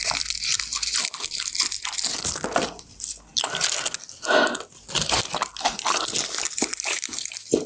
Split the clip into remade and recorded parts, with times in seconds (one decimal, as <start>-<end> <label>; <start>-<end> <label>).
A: 0.0-7.7 recorded